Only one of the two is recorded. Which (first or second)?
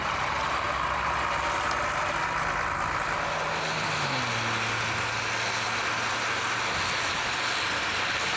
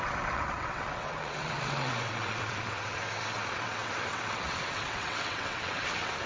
first